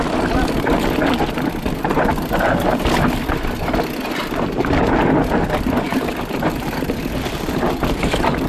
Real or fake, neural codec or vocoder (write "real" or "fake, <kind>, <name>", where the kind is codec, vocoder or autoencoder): fake, vocoder, BigVGAN v2